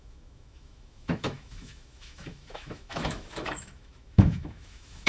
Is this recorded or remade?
remade